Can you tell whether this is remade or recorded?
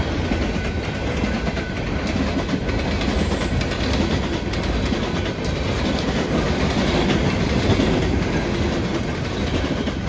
recorded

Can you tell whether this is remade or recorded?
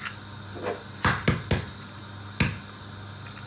recorded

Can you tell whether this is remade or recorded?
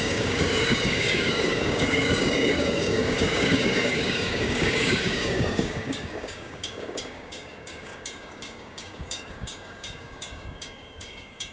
remade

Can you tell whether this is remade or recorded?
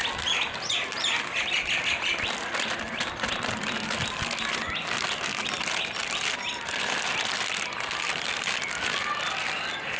recorded